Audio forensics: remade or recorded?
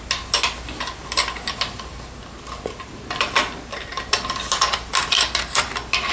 recorded